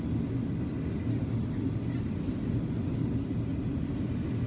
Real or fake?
real